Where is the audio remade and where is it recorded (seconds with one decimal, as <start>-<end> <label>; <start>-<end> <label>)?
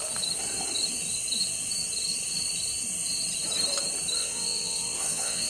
0.0-4.2 recorded; 4.2-5.5 remade